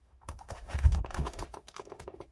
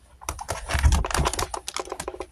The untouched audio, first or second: second